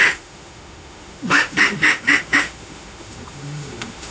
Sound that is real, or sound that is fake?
fake